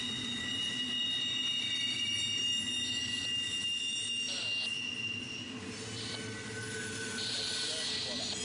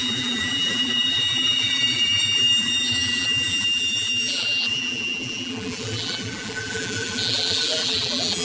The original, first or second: first